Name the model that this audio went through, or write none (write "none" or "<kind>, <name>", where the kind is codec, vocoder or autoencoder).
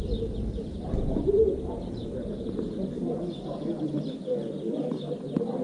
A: none